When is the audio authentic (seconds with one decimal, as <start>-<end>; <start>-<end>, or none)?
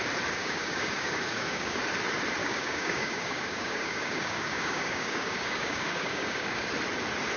0.0-0.4; 1.8-2.4; 6.7-7.4